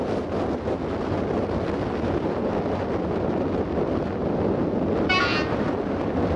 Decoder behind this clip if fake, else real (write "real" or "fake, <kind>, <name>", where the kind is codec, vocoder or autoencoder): real